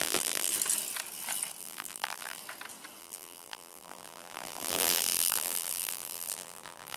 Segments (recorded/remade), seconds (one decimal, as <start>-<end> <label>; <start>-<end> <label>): 0.0-0.5 remade; 0.5-1.6 recorded; 1.6-2.4 remade; 2.4-3.0 recorded; 3.0-7.0 remade